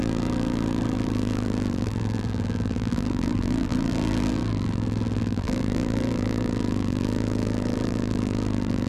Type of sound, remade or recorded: remade